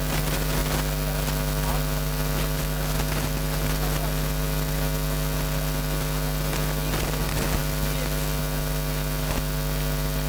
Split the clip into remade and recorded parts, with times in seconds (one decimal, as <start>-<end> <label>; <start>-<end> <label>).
0.0-10.3 recorded